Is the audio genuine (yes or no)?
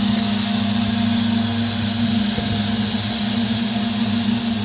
yes